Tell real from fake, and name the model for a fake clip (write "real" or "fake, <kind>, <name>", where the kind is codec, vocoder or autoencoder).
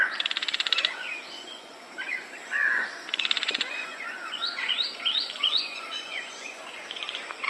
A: fake, vocoder, Vocos